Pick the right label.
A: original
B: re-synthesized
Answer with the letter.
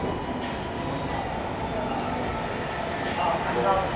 A